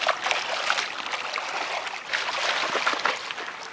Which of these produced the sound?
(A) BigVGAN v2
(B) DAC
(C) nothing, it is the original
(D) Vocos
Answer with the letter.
C